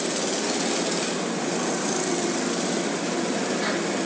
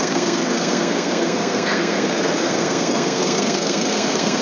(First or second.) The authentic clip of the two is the first